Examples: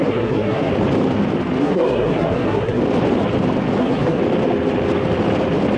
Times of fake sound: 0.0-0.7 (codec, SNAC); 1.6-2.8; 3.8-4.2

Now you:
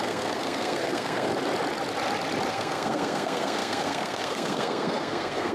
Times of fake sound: 0.0-1.3 (codec, SNAC); 2.5-5.5

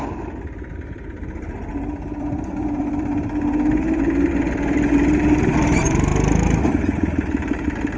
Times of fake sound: 0.0-6.1 (vocoder, BigVGAN v2); 6.7-8.0

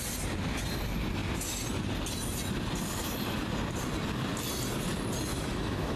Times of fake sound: 5.3-6.0 (autoencoder, DAC-VAE)

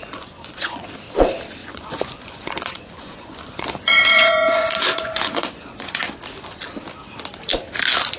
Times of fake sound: 0.0-0.9 (vocoder, Vocos); 1.6-6.1